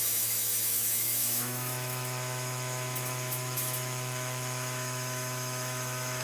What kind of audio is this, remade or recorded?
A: remade